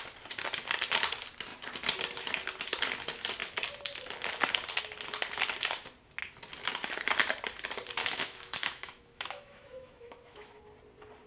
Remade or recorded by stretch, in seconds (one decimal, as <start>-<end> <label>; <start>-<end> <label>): 0.0-8.0 recorded; 8.0-10.6 remade; 10.6-11.3 recorded